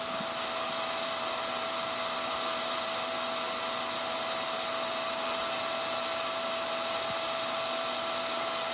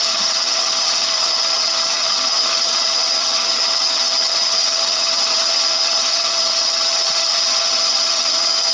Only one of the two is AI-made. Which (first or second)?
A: second